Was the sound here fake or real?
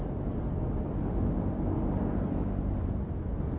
real